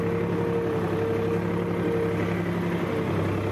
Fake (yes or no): no